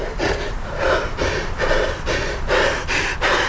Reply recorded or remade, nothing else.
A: recorded